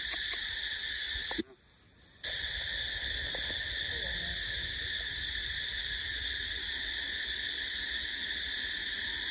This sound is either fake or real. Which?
real